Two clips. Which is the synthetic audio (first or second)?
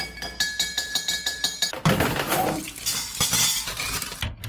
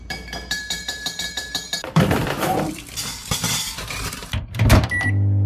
second